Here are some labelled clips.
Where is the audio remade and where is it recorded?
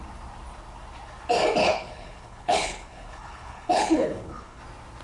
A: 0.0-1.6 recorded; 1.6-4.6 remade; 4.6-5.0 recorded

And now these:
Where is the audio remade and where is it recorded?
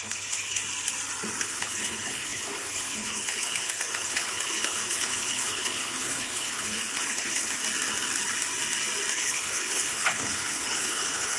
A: 0.0-0.6 remade; 0.6-1.4 recorded; 1.4-7.6 remade; 7.6-9.1 recorded; 9.1-11.4 remade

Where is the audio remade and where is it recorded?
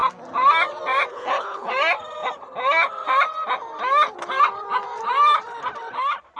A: 0.0-1.1 recorded; 1.1-1.7 remade; 1.7-6.4 recorded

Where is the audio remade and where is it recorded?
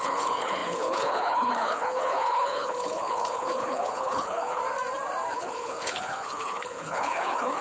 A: 0.0-4.6 remade; 4.6-5.3 recorded; 5.3-7.6 remade